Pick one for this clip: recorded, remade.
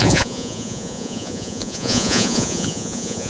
remade